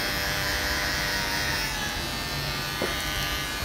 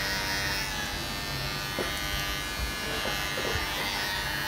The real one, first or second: second